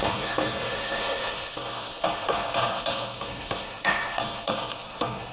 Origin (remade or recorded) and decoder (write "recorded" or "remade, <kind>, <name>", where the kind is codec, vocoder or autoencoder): remade, codec, SNAC